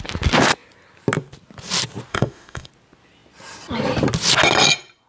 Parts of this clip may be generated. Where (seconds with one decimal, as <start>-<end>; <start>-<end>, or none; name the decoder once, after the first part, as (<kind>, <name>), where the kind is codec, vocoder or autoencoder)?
2.1-2.7 (autoencoder, DAC-VAE)